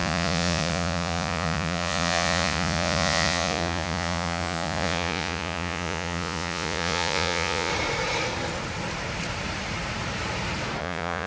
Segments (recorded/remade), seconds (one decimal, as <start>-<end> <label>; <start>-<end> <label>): 0.0-7.7 remade; 7.7-10.8 recorded; 10.8-11.3 remade